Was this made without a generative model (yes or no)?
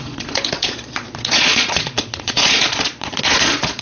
no